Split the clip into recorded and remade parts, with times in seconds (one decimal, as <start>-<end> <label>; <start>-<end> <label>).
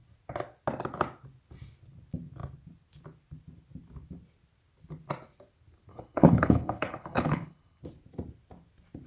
0.0-5.9 recorded; 5.9-7.8 remade; 7.8-9.1 recorded